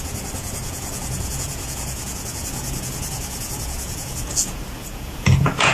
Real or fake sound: fake